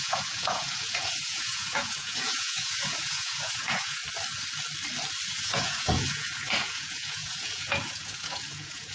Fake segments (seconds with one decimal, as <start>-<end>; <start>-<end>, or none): 0.0-4.0; 5.3-8.9